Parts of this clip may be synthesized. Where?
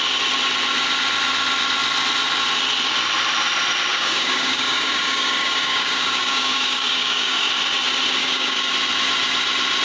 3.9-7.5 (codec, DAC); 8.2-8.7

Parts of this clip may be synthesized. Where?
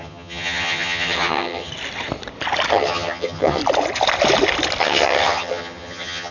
0.0-1.7 (vocoder, HiFi-GAN); 2.7-3.6; 4.8-6.3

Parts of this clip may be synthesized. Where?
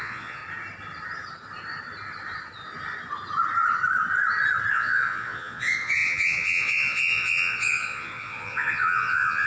0.0-0.4 (vocoder, Vocos); 4.7-9.5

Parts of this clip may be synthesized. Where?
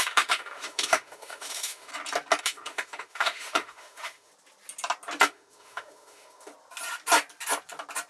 0.0-1.9 (autoencoder, DAC-VAE); 2.4-4.3; 5.3-6.5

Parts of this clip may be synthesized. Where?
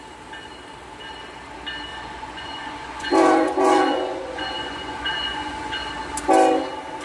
1.9-5.9 (vocoder, Vocos)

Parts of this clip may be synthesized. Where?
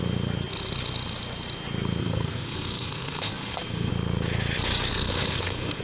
2.0-3.9 (codec, SNAC); 4.9-5.8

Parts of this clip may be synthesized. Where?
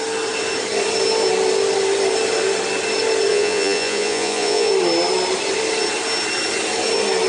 3.3-4.7 (vocoder, Vocos)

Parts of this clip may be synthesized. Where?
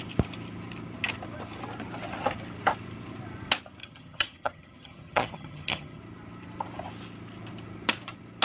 3.8-6.0 (vocoder, HiFi-GAN)